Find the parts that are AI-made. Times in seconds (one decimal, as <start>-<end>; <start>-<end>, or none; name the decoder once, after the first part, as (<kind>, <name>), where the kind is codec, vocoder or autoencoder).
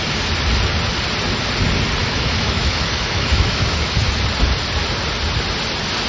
2.0-3.9 (autoencoder, DAC-VAE)